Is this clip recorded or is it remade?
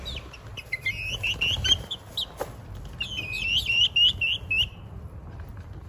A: recorded